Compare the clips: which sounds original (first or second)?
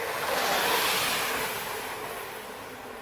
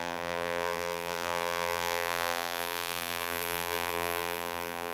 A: first